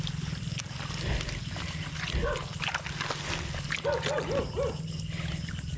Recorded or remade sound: recorded